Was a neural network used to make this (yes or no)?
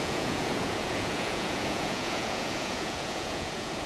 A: yes